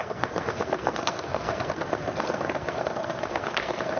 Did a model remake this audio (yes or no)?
yes